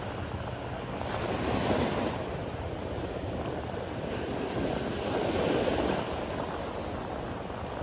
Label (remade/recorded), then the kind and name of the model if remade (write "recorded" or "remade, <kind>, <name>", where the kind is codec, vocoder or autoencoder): recorded